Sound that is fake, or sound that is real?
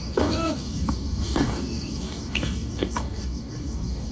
fake